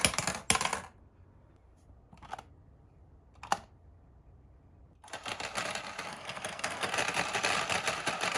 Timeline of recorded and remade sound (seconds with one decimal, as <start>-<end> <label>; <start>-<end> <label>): 0.0-6.1 recorded; 6.1-6.9 remade; 6.9-8.4 recorded